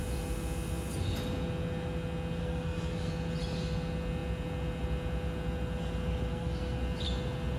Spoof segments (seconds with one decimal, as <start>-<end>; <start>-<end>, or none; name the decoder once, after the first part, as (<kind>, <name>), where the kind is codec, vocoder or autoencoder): 2.4-3.1 (codec, SNAC); 6.3-6.8